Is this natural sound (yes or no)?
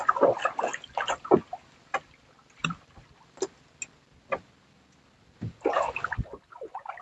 yes